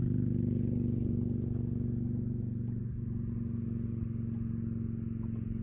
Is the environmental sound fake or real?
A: real